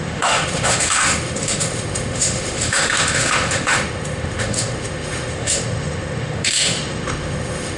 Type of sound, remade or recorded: remade